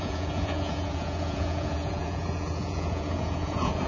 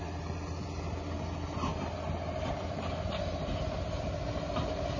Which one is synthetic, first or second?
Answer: first